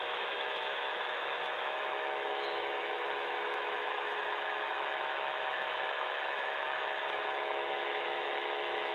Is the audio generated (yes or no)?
yes